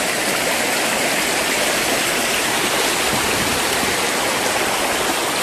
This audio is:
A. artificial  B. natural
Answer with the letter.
B